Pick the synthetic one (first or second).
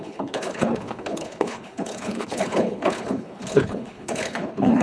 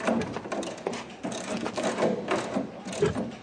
first